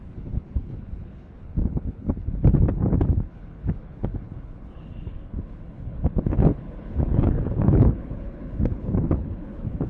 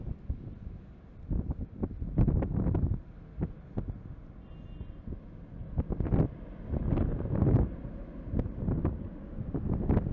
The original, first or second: second